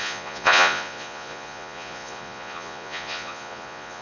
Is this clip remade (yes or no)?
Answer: yes